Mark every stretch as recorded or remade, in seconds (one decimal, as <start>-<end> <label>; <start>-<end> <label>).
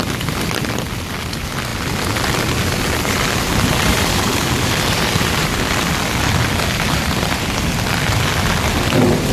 0.0-4.1 recorded; 4.1-4.7 remade; 4.7-9.3 recorded